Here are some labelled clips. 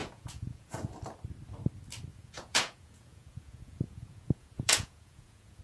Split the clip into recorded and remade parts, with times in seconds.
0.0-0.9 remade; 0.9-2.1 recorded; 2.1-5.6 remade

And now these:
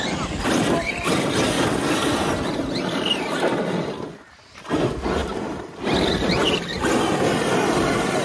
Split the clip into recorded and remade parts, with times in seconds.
0.0-8.2 recorded

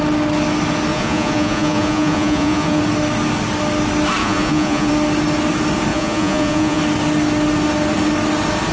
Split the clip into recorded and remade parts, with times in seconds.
0.0-0.9 recorded; 0.9-2.8 remade; 2.8-4.2 recorded; 4.2-4.9 remade; 4.9-5.9 recorded; 5.9-6.8 remade; 6.8-8.7 recorded

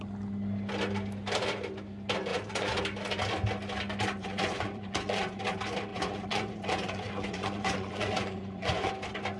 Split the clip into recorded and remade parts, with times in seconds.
0.0-2.3 recorded; 2.3-2.8 remade; 2.8-4.2 recorded; 4.2-5.4 remade; 5.4-5.9 recorded; 5.9-8.9 remade; 8.9-9.4 recorded

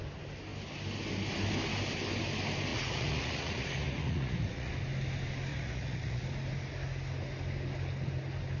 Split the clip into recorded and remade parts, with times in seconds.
0.0-2.7 recorded; 2.7-4.7 remade; 4.7-5.5 recorded; 5.5-6.2 remade; 6.2-8.6 recorded

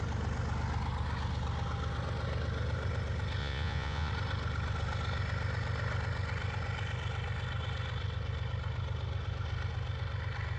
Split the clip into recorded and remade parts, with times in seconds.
0.0-3.4 recorded; 3.4-4.1 remade; 4.1-10.6 recorded

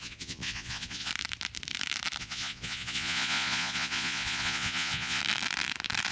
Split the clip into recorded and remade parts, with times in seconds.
0.0-1.1 remade; 1.1-2.2 recorded; 2.2-5.2 remade; 5.2-6.1 recorded

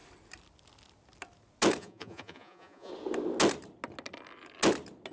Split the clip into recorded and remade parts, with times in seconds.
0.0-1.8 recorded; 1.8-2.9 remade; 2.9-5.1 recorded